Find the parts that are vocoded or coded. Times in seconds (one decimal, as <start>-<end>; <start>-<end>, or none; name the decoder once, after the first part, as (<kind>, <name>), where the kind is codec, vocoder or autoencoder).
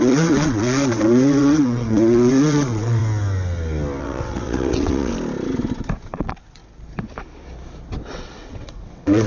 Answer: 0.0-3.0 (vocoder, WaveNeXt); 4.0-5.1; 6.1-6.6; 8.1-9.3